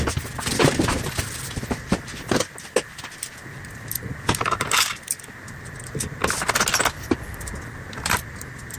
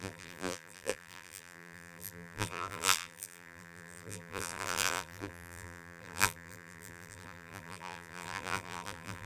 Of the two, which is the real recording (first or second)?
first